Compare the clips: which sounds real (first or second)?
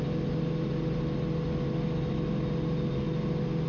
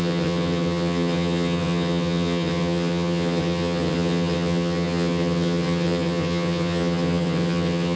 first